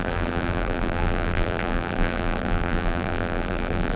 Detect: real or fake fake